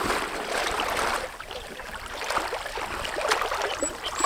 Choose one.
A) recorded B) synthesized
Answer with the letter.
A